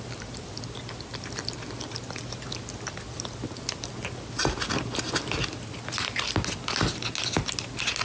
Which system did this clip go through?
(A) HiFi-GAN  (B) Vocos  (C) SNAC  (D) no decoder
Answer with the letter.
D